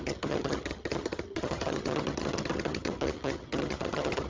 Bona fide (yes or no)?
no